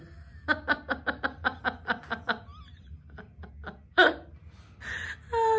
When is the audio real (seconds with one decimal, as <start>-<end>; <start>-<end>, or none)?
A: 0.0-5.6